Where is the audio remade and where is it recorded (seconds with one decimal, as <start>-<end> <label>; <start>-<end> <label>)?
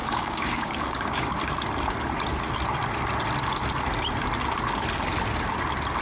0.0-1.4 remade; 1.4-6.0 recorded